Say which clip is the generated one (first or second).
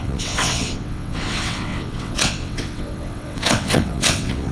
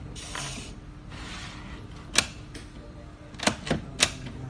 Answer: first